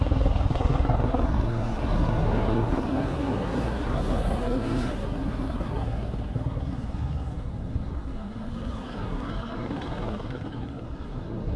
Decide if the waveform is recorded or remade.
remade